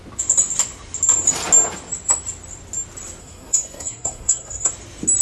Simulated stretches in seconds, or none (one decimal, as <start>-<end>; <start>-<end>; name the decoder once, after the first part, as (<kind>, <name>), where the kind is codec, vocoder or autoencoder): 3.2-4.7 (codec, SNAC)